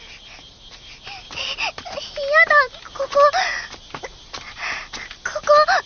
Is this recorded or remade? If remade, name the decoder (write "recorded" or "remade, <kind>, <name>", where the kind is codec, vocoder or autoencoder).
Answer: recorded